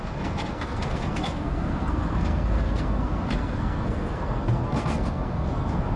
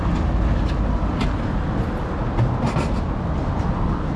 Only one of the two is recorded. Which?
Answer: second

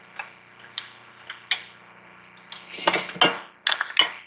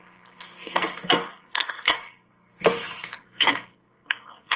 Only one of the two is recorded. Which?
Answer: first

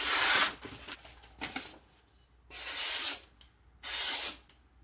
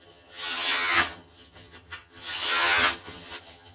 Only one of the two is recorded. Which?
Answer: first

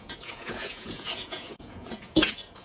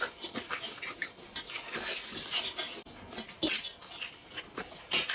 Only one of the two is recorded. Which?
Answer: second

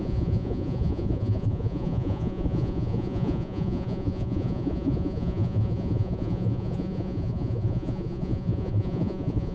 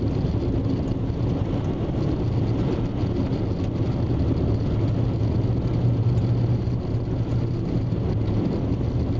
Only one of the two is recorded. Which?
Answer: second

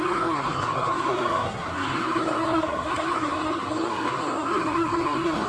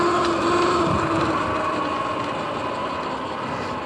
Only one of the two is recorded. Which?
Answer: second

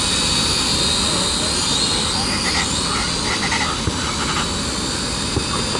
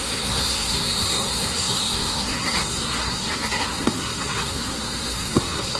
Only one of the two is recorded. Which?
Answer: first